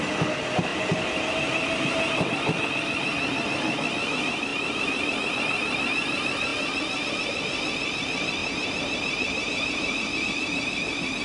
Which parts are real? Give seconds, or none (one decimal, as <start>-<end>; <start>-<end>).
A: 0.0-4.5; 5.3-8.4; 10.2-11.2